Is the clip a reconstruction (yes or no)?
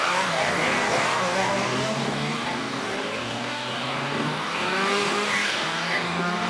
yes